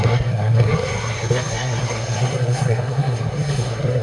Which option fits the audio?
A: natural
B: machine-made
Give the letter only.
B